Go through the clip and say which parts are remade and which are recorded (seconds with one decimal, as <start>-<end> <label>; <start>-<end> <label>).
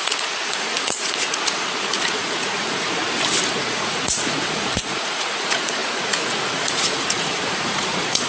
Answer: 0.0-3.0 remade; 3.0-3.5 recorded; 3.5-8.3 remade